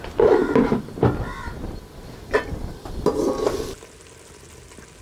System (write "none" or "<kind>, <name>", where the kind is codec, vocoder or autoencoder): none